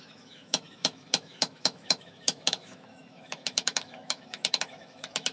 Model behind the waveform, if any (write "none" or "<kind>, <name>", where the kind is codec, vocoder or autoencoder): autoencoder, DAC-VAE